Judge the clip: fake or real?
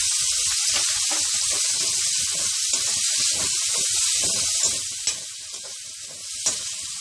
real